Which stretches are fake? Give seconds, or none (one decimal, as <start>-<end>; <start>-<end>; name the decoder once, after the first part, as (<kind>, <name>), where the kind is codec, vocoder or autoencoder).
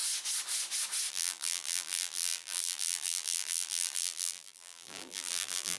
1.1-5.8 (vocoder, BigVGAN v2)